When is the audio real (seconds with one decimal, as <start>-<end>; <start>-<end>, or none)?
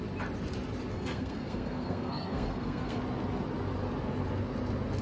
0.0-0.9; 3.0-5.0